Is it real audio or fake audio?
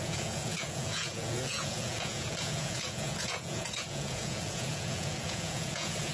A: fake